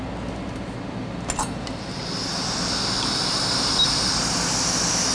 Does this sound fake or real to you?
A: real